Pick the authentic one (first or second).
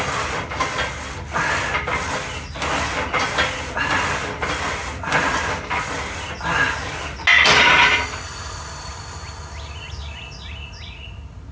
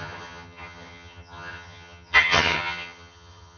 first